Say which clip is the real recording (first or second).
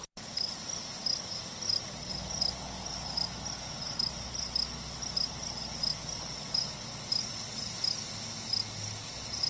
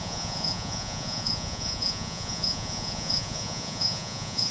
first